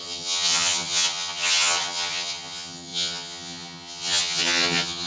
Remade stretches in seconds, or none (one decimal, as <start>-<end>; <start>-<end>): 0.0-5.1